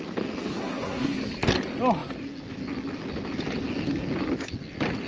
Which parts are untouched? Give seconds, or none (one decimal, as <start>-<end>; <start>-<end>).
0.0-0.5; 1.2-5.1